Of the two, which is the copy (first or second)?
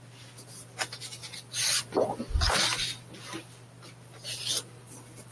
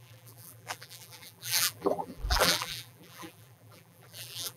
second